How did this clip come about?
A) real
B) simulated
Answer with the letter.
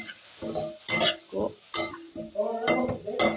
A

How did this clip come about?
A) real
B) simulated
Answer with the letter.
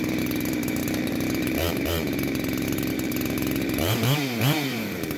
B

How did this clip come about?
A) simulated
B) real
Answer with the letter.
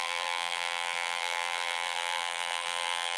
A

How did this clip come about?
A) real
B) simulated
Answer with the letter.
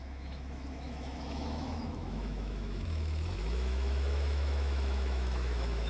B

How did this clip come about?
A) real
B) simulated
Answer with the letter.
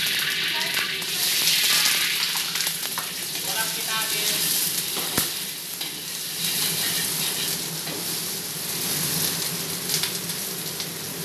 A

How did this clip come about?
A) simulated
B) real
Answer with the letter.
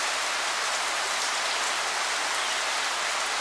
B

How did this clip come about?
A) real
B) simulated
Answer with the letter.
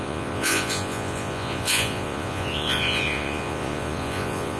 B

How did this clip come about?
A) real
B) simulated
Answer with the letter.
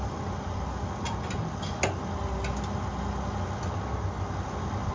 A